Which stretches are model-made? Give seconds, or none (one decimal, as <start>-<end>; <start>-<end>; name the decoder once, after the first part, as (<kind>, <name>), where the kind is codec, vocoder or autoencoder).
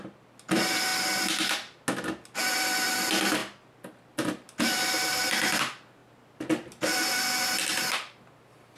none